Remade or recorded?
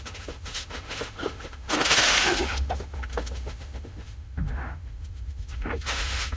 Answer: remade